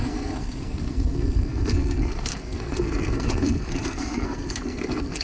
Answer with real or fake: fake